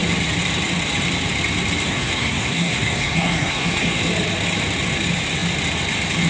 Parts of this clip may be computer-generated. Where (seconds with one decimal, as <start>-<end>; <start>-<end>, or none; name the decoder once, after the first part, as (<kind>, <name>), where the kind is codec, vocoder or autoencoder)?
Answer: 1.9-4.0 (codec, SNAC)